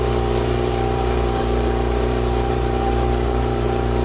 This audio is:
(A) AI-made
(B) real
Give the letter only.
A